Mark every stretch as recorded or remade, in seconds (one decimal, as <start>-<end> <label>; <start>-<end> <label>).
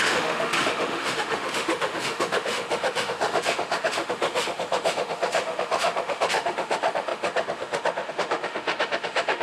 0.0-9.4 remade